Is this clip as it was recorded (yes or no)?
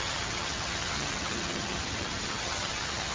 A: no